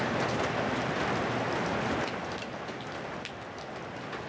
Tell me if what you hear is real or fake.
real